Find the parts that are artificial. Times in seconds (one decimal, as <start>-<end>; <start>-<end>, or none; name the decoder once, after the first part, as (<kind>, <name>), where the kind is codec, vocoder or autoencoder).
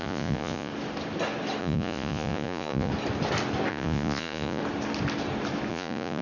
0.0-0.7 (vocoder, Vocos); 1.6-2.9; 3.7-4.6; 5.7-6.2